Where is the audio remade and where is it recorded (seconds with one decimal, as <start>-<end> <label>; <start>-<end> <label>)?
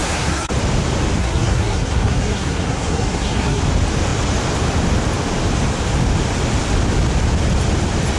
0.0-0.5 remade; 0.5-1.2 recorded; 1.2-3.6 remade; 3.6-8.2 recorded